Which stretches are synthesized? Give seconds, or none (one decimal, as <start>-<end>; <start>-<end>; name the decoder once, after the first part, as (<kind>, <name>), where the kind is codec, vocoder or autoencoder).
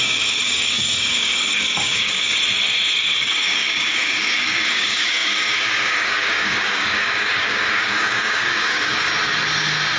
0.0-2.3 (codec, DAC); 3.0-9.1